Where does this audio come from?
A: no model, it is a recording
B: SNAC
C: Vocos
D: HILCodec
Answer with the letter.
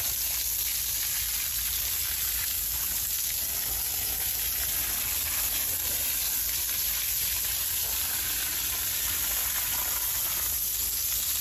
A